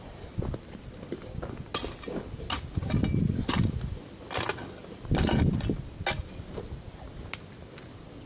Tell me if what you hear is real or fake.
real